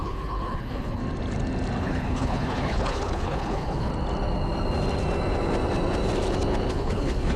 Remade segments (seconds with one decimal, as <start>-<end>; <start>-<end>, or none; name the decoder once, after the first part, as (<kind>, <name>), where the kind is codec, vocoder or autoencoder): 0.0-1.0 (codec, HILCodec); 1.8-3.9; 6.7-7.4